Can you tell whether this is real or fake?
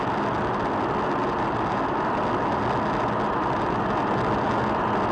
real